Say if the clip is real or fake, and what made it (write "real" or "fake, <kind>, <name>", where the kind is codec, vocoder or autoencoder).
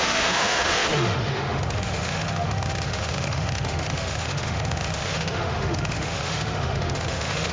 fake, autoencoder, DAC-VAE